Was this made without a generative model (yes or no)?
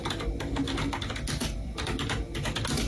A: yes